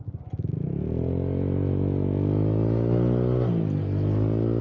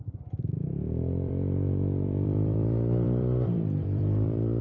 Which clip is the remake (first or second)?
second